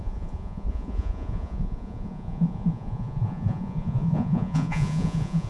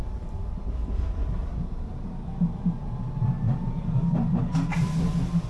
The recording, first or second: second